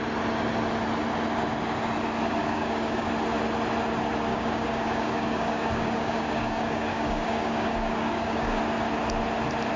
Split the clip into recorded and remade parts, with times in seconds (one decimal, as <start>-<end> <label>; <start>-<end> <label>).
0.0-2.4 recorded; 2.4-3.1 remade; 3.1-4.3 recorded; 4.3-8.6 remade; 8.6-9.8 recorded

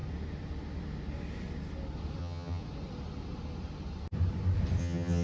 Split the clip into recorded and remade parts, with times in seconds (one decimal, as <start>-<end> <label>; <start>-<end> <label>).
0.0-2.2 recorded; 2.2-2.6 remade; 2.6-4.8 recorded; 4.8-5.2 remade

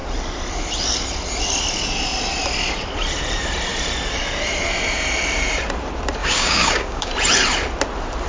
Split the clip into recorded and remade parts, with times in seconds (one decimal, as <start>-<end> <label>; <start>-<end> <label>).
0.0-6.2 recorded; 6.2-7.1 remade; 7.1-8.3 recorded

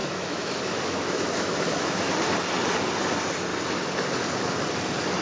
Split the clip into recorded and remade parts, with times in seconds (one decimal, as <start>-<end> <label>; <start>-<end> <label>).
0.0-2.1 remade; 2.1-5.2 recorded

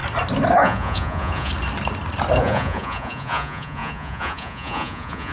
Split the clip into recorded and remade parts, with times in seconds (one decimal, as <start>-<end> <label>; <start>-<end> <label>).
0.0-0.6 recorded; 0.6-1.5 remade; 1.5-2.4 recorded; 2.4-5.3 remade

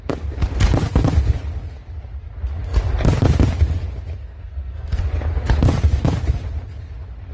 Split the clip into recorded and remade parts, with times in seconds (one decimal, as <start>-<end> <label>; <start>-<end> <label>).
0.0-4.2 recorded; 4.2-5.0 remade; 5.0-7.3 recorded

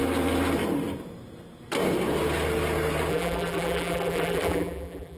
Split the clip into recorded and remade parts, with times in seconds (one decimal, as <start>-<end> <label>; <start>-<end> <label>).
0.0-3.1 recorded; 3.1-5.2 remade

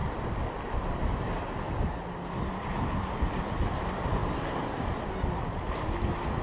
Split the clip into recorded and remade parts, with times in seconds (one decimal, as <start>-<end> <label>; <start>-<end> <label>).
0.0-6.4 recorded